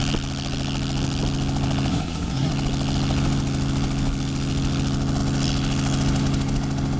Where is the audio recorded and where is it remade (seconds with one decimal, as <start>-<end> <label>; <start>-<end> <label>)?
0.0-1.9 recorded; 1.9-2.5 remade; 2.5-7.0 recorded